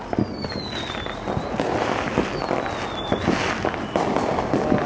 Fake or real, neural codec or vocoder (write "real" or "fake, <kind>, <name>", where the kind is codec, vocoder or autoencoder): real